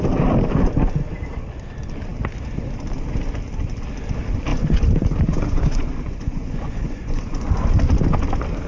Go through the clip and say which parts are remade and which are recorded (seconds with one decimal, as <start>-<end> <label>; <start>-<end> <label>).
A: 0.0-4.5 recorded; 4.5-7.5 remade; 7.5-8.7 recorded